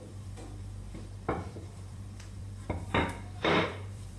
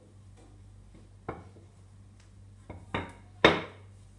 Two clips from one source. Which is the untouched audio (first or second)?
second